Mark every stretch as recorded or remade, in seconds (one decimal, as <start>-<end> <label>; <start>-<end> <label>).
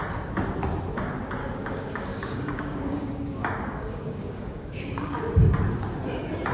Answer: 0.0-1.4 recorded; 1.4-5.3 remade; 5.3-6.5 recorded